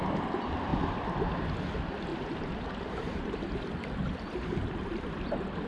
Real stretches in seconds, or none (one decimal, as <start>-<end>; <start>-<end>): 0.0-2.1